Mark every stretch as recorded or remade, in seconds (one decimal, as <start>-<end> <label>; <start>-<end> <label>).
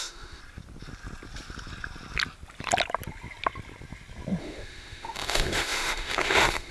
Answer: 0.0-0.4 remade; 0.4-4.4 recorded; 4.4-6.7 remade